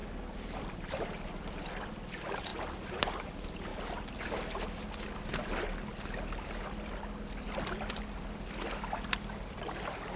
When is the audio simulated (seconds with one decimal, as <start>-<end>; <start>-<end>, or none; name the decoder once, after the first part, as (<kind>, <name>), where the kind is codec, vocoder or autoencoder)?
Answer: none